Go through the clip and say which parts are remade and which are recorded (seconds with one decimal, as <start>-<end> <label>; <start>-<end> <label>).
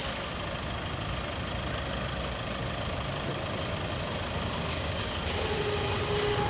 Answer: 0.0-6.5 recorded